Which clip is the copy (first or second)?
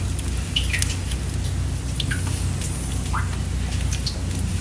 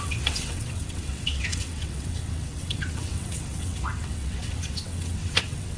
second